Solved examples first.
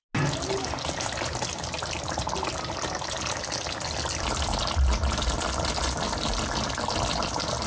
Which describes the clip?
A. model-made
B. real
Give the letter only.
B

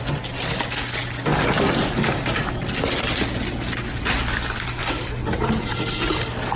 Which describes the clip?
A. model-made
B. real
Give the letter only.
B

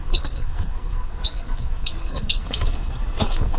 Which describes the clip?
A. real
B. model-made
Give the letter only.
B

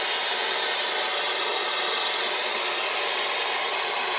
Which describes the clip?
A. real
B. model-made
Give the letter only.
A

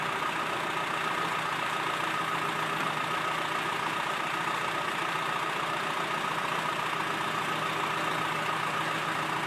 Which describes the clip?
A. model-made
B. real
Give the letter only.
B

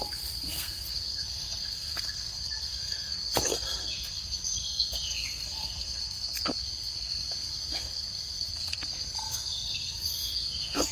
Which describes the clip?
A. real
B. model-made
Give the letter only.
B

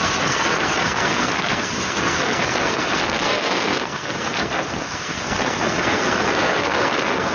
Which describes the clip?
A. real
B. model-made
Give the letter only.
B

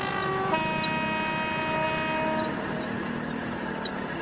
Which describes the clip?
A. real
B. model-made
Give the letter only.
A